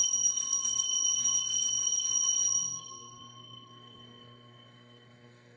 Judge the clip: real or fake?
fake